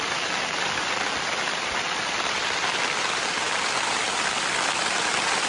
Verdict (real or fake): fake